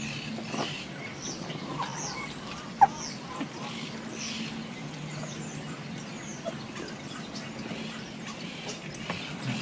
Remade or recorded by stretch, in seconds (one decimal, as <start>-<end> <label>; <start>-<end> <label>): 0.0-9.6 recorded